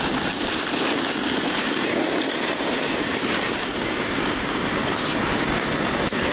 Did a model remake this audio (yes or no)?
no